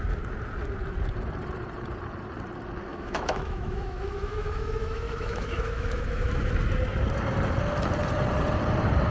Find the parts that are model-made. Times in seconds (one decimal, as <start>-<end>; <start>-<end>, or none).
2.9-6.5